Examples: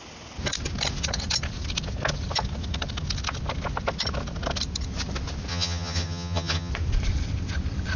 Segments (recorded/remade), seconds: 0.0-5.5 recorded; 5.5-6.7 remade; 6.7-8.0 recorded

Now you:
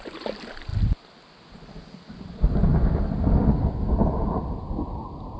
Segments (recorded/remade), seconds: 0.0-5.4 recorded

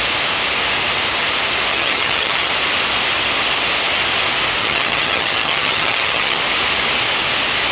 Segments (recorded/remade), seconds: 0.0-1.7 recorded; 1.7-2.5 remade; 2.5-4.6 recorded; 4.6-6.4 remade; 6.4-7.7 recorded

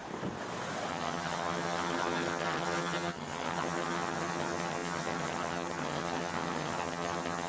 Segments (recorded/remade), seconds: 0.0-0.9 recorded; 0.9-7.5 remade

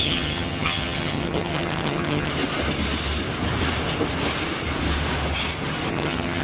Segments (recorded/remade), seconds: 0.0-2.3 remade; 2.3-5.9 recorded; 5.9-6.4 remade

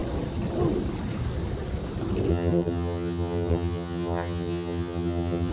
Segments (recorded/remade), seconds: 0.0-2.3 recorded; 2.3-5.5 remade

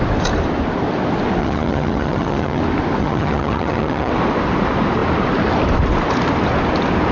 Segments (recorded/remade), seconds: 0.0-1.4 recorded; 1.4-2.6 remade; 2.6-3.0 recorded; 3.0-4.1 remade; 4.1-7.1 recorded

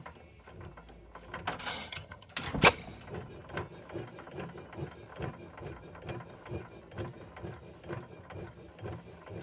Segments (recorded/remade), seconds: 0.0-1.7 recorded; 1.7-2.3 remade; 2.3-9.4 recorded